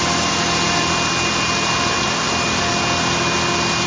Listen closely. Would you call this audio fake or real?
real